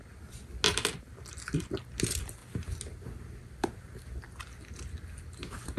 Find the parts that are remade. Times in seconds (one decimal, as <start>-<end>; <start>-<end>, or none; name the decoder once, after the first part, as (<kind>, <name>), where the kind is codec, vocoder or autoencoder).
none